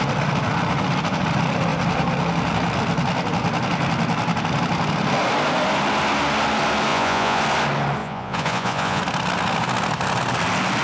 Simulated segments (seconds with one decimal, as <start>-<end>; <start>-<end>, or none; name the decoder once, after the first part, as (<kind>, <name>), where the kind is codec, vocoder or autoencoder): 6.9-7.4 (vocoder, Vocos); 8.0-9.0